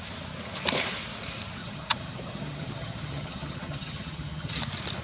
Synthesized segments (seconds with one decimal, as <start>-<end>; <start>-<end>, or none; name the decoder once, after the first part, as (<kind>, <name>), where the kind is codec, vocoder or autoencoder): 1.6-4.6 (vocoder, HiFi-GAN)